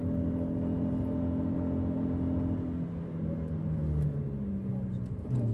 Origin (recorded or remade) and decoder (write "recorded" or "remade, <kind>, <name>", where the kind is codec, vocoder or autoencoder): recorded